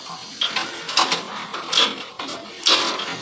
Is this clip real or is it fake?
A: real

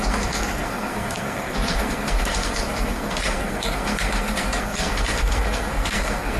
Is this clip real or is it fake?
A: fake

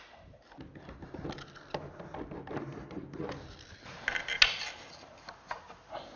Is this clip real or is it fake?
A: real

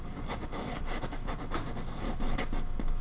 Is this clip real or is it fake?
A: real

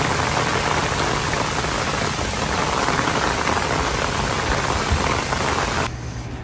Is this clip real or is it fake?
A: real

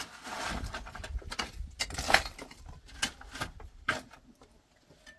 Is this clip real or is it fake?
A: real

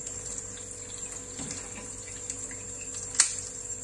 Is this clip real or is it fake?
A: real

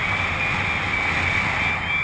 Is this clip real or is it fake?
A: real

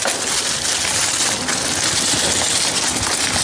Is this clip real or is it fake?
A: real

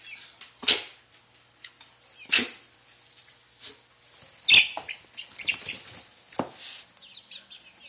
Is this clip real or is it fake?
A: real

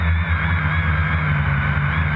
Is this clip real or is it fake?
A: real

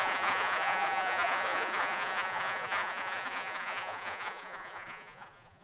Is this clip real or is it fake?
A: fake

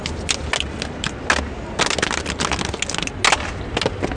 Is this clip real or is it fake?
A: real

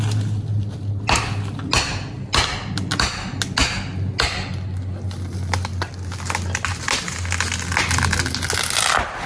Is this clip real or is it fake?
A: real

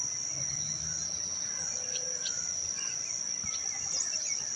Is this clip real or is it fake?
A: real